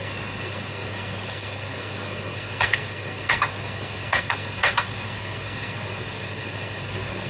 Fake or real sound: fake